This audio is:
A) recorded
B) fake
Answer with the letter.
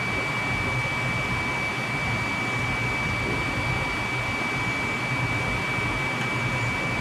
A